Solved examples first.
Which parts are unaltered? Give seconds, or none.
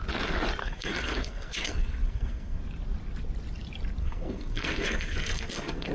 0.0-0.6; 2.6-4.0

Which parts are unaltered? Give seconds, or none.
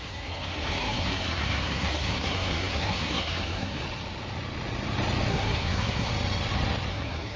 3.8-5.3; 6.1-6.9